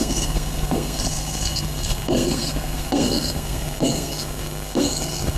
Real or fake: fake